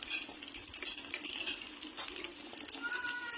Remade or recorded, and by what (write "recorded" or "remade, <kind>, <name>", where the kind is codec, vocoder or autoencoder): recorded